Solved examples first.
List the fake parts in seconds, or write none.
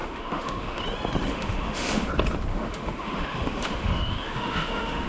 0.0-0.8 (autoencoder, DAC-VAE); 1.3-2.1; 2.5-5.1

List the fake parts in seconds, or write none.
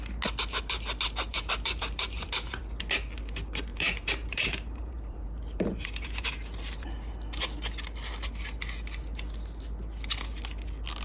1.3-2.6 (vocoder, BigVGAN v2); 3.7-6.3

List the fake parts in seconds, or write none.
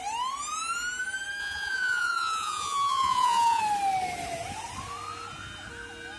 1.4-3.6 (vocoder, Vocos)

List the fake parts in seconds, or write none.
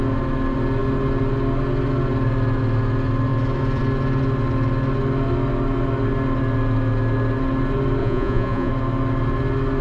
8.0-8.7 (vocoder, Vocos)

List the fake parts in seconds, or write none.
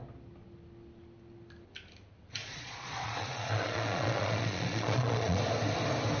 2.4-5.4 (vocoder, Vocos)